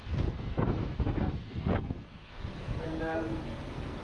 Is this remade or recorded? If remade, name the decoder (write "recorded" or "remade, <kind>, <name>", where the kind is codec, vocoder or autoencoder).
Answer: remade, codec, SNAC